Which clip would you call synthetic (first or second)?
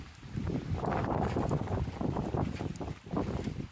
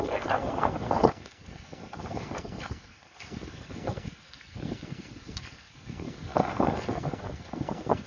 second